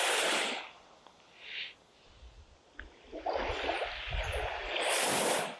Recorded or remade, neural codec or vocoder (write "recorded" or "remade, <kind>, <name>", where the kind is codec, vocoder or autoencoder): recorded